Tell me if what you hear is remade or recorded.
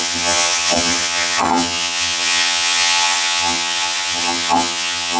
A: remade